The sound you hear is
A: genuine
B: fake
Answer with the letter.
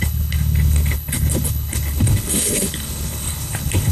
B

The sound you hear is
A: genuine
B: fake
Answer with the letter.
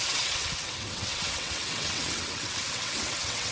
B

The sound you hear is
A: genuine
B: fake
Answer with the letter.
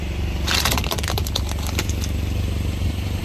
A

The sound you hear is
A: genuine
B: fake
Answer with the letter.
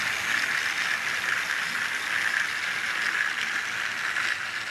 A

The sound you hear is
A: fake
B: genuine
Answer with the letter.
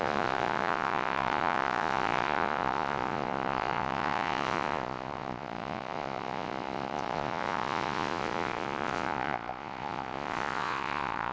A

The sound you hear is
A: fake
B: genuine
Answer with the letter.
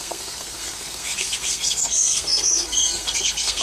A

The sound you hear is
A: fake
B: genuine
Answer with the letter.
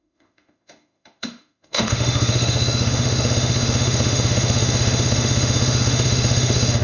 A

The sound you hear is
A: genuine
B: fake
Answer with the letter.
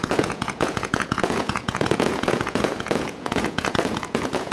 B